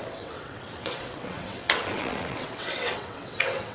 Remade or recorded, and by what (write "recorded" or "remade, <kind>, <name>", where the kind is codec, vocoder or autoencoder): remade, vocoder, WaveNeXt